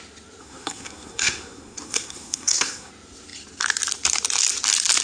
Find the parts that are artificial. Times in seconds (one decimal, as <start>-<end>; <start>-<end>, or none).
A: 0.4-2.9